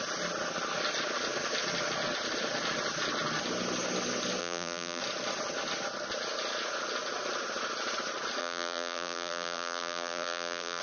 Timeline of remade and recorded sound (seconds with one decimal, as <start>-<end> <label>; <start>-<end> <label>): 0.0-4.4 recorded; 4.4-5.0 remade; 5.0-8.4 recorded; 8.4-10.8 remade